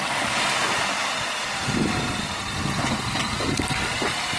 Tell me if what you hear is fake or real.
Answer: real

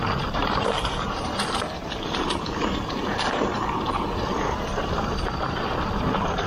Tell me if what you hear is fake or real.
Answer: fake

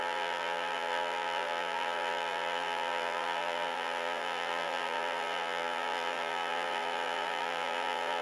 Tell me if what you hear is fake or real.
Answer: fake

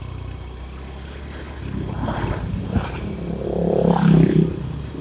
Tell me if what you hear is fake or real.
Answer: real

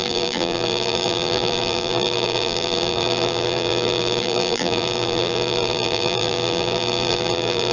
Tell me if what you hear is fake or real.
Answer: fake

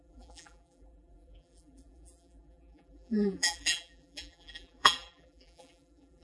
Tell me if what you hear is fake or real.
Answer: fake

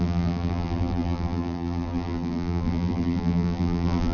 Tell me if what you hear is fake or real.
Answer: fake